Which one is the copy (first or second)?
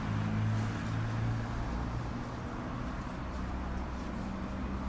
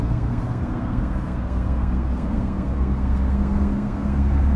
second